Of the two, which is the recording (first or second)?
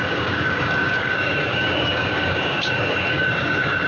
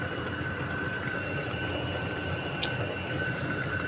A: second